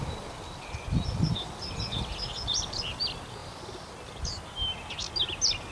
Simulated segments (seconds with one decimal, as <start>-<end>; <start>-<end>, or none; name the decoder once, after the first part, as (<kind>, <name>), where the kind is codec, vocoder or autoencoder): 0.0-3.0 (vocoder, BigVGAN v2); 3.4-4.4